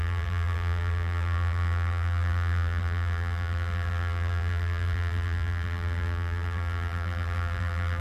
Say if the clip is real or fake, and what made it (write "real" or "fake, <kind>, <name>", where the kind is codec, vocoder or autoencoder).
fake, vocoder, BigVGAN v2